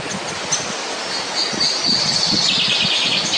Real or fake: real